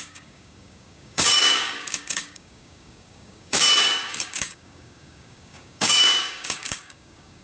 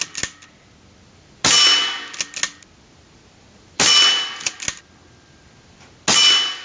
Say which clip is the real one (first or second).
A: second